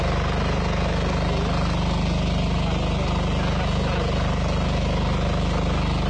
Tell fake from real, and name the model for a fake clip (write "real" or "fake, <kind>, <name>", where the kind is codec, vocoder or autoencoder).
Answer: real